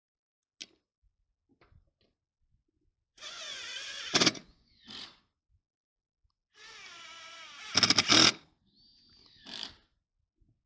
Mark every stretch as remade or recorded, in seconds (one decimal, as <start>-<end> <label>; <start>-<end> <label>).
0.0-2.3 recorded; 2.3-5.2 remade; 5.2-10.7 recorded